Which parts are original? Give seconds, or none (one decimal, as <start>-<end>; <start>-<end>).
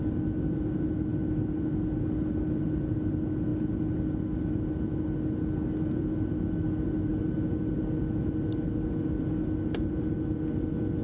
0.0-11.0